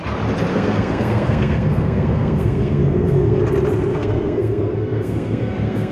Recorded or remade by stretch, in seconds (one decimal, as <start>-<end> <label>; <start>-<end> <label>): 0.0-0.5 recorded; 0.5-3.4 remade; 3.4-3.9 recorded; 3.9-5.9 remade